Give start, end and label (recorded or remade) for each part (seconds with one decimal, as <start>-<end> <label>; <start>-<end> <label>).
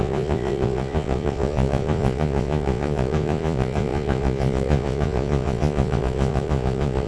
0.0-7.1 remade